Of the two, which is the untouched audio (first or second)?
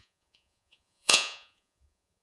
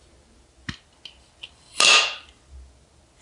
second